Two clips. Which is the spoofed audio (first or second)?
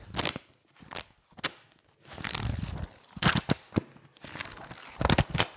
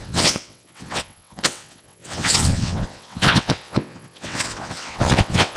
second